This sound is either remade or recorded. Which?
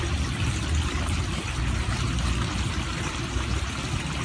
recorded